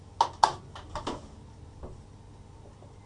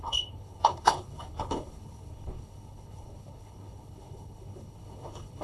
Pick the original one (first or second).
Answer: first